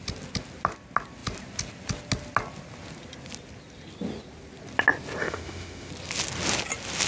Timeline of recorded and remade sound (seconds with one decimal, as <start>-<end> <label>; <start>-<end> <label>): 0.0-5.2 recorded; 5.2-5.9 remade; 5.9-7.1 recorded